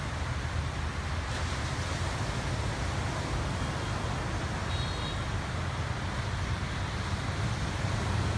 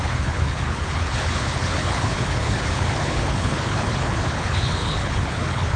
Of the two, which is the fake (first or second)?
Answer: second